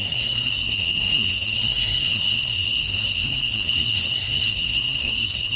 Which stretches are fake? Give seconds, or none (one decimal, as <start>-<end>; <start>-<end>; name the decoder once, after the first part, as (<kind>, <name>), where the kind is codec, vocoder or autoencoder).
0.0-5.6 (codec, SNAC)